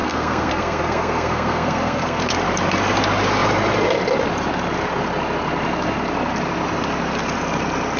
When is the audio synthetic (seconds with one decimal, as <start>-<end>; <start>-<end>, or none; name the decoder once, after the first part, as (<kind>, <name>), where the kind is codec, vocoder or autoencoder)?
0.0-2.2 (codec, SNAC)